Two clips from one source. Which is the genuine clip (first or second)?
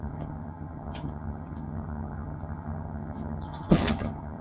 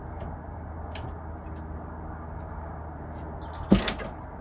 second